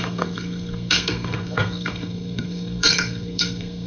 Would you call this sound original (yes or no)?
no